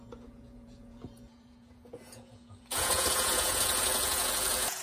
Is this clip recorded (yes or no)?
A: no